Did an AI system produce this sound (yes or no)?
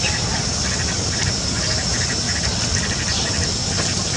no